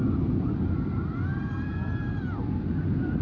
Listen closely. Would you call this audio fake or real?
real